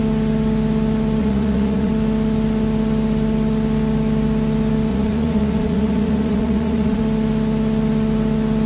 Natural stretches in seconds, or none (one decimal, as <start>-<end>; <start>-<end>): 0.0-1.2; 1.9-4.9; 7.0-8.7